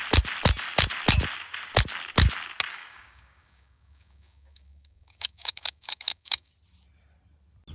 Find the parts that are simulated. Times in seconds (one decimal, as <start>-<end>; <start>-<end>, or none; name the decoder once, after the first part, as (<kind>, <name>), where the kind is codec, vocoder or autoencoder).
2.7-6.5 (codec, DAC)